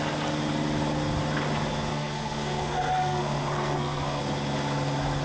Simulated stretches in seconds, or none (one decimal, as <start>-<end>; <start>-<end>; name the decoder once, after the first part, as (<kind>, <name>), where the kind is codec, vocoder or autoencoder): 1.9-4.2 (codec, SNAC)